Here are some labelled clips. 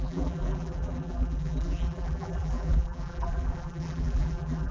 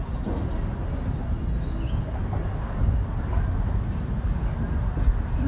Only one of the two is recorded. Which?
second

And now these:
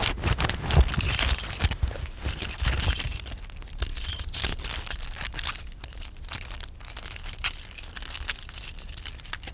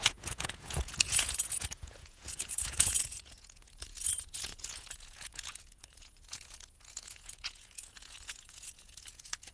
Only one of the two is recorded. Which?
first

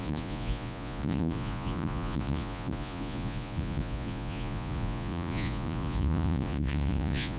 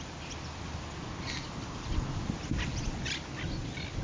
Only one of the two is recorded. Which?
second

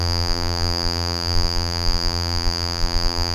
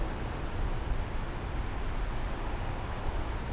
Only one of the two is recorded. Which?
second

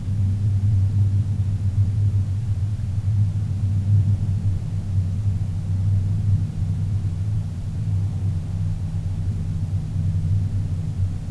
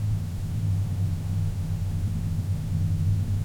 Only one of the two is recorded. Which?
first